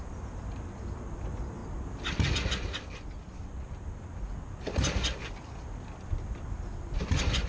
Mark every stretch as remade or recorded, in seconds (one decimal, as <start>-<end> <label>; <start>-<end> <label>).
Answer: 0.0-7.5 recorded